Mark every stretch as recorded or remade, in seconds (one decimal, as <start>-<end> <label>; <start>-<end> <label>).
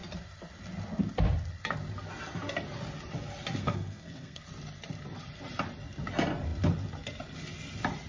0.0-3.6 recorded; 3.6-4.4 remade; 4.4-8.1 recorded